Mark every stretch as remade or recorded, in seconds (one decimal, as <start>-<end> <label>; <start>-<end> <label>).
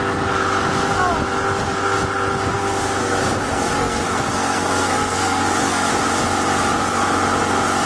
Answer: 0.0-3.0 recorded; 3.0-5.9 remade; 5.9-7.9 recorded